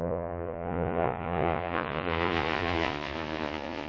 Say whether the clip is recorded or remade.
remade